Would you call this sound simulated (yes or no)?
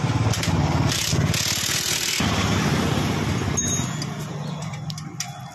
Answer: no